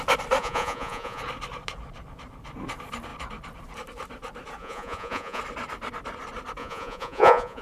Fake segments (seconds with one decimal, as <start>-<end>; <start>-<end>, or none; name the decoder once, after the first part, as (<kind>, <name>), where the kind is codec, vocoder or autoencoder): 0.4-1.2 (vocoder, Vocos); 4.6-5.4; 6.6-7.6

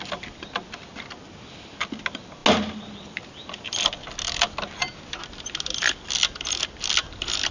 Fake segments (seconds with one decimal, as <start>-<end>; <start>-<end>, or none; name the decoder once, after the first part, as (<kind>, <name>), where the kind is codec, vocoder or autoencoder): none

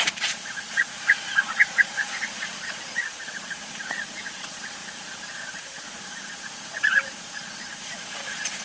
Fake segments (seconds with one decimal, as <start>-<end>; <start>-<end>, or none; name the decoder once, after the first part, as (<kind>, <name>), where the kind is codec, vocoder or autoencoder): 0.0-4.8 (vocoder, Vocos); 5.3-8.6

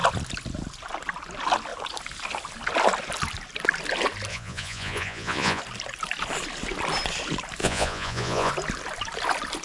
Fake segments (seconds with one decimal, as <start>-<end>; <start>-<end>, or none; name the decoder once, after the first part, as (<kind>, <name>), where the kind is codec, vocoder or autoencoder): 4.3-5.6 (vocoder, Vocos); 7.6-8.5